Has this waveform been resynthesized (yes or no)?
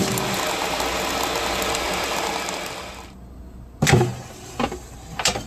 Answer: no